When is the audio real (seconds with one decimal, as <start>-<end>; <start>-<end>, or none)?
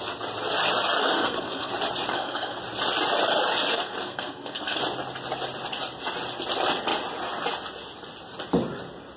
0.0-1.0; 1.7-2.1; 2.6-3.7; 4.8-9.2